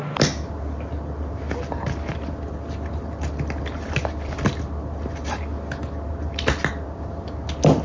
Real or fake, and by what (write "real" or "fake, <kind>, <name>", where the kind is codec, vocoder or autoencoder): real